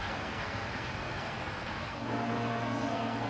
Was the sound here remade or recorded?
remade